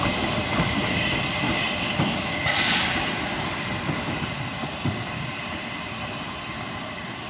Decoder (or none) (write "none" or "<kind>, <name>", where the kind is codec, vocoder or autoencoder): vocoder, BigVGAN v2